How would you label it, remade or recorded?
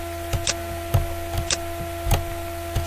recorded